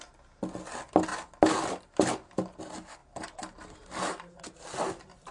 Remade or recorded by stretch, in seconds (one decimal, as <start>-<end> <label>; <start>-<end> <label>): 0.0-3.0 recorded; 3.0-4.4 remade; 4.4-5.3 recorded